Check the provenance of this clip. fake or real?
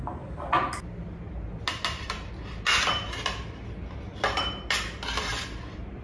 real